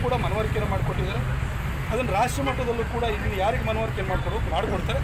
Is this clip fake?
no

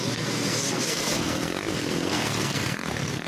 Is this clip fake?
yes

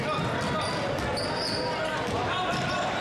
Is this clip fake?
no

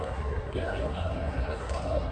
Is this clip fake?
yes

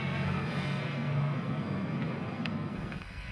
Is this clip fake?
yes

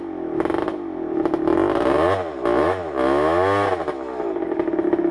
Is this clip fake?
no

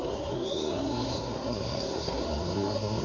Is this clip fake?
yes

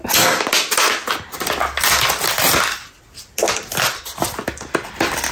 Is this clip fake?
no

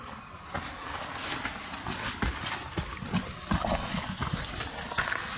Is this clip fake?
no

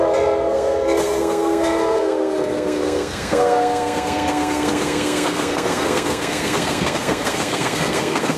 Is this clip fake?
yes